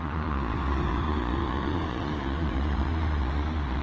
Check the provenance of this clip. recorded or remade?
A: remade